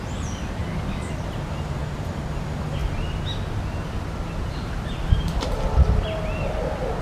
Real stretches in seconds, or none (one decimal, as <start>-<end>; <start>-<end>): 0.0-7.0